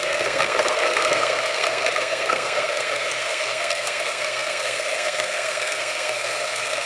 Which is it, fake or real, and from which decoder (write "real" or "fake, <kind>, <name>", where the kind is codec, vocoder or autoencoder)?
fake, codec, SNAC